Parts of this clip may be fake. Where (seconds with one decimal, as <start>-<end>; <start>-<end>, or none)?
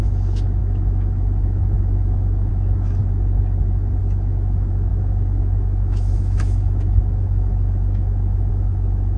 0.0-3.0; 4.0-9.2